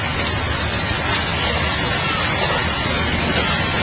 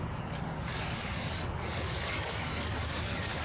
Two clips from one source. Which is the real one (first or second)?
first